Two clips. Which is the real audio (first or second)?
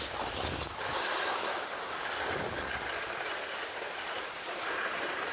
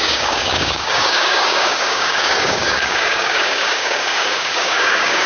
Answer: first